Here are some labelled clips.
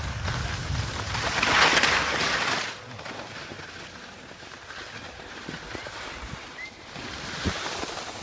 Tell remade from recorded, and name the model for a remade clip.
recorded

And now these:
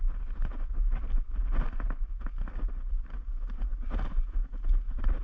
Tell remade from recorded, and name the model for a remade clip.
recorded